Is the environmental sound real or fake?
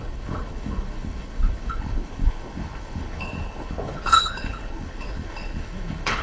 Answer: fake